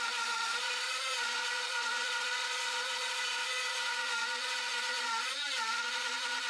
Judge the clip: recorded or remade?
remade